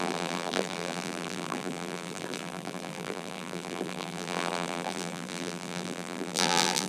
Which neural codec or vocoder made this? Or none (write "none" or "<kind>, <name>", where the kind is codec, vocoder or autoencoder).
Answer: vocoder, BigVGAN v2